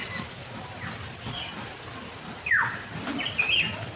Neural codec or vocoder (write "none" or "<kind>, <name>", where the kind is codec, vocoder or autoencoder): none